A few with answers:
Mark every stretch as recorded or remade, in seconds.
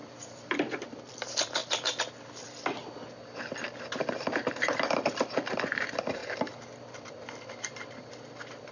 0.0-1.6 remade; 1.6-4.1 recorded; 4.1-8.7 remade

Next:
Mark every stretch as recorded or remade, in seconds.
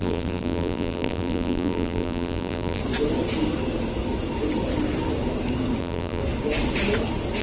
0.0-2.8 remade; 2.8-5.8 recorded; 5.8-6.2 remade; 6.2-7.4 recorded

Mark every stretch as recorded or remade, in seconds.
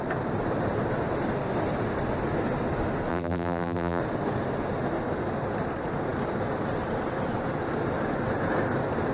0.0-3.1 recorded; 3.1-4.0 remade; 4.0-9.1 recorded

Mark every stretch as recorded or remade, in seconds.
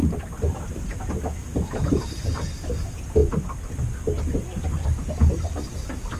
0.0-1.4 recorded; 1.4-2.4 remade; 2.4-6.2 recorded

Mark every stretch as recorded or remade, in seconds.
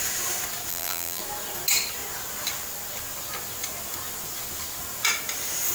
0.0-0.7 recorded; 0.7-1.2 remade; 1.2-5.7 recorded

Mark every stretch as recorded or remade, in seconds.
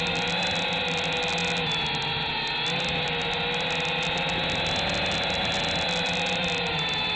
0.0-7.2 recorded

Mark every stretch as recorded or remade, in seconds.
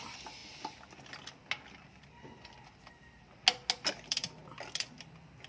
0.0-0.4 remade; 0.4-2.9 recorded; 2.9-3.4 remade; 3.4-4.0 recorded; 4.0-5.5 remade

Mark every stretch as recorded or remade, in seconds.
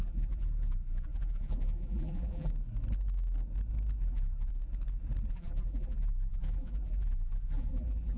0.0-2.5 remade; 2.5-4.0 recorded; 4.0-4.5 remade; 4.5-5.3 recorded; 5.3-8.2 remade